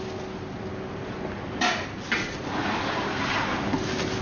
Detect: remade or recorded recorded